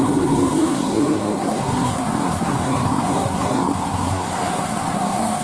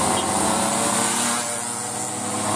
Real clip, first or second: second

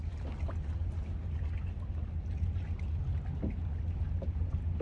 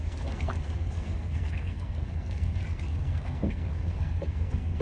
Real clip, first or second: first